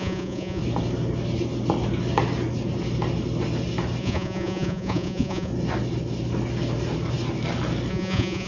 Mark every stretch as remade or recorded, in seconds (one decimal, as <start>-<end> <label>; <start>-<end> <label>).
0.0-0.6 remade; 0.6-4.0 recorded; 4.0-5.5 remade; 5.5-7.9 recorded; 7.9-8.5 remade